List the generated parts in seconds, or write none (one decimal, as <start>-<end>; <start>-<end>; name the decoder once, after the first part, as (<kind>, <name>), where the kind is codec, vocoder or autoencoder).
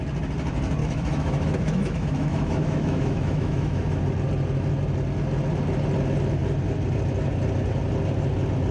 0.8-4.0 (autoencoder, DAC-VAE)